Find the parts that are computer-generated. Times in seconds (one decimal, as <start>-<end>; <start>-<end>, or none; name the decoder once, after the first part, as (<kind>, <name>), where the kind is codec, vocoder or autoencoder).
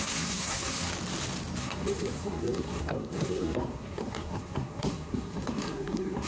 0.0-0.9 (codec, SNAC); 1.6-6.3